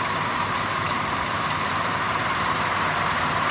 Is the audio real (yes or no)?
no